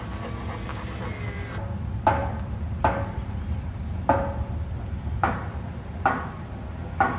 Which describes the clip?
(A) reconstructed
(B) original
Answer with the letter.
B